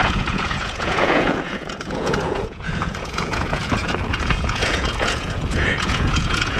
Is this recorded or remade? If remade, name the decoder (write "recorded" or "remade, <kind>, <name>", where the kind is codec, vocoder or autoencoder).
remade, vocoder, Vocos